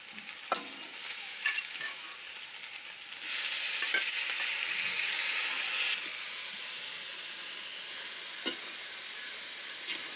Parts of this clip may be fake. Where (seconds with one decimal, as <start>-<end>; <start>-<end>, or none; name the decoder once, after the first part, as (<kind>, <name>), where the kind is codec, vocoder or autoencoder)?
1.1-2.0 (autoencoder, DAC-VAE)